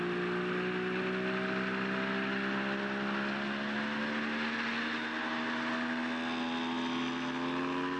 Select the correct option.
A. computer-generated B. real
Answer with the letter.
B